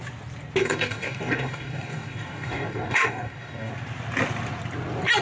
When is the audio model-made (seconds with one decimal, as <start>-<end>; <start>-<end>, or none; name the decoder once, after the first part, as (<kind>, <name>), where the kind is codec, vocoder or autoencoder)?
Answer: 0.6-3.7 (codec, DAC)